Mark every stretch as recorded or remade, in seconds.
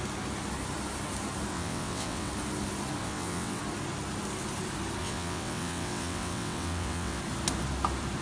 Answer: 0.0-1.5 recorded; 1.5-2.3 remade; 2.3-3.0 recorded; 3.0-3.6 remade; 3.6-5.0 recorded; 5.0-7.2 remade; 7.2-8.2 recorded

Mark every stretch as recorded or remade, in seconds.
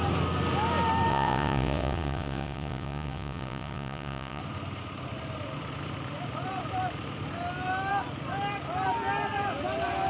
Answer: 0.0-1.1 recorded; 1.1-4.4 remade; 4.4-10.1 recorded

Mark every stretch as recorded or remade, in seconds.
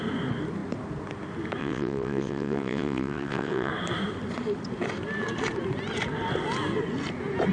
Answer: 0.0-1.6 recorded; 1.6-3.7 remade; 3.7-7.5 recorded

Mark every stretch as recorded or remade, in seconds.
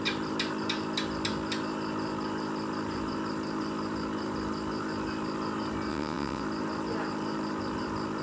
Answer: 0.0-5.9 recorded; 5.9-6.4 remade; 6.4-8.2 recorded